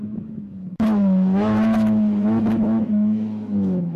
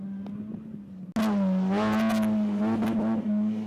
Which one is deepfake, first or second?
first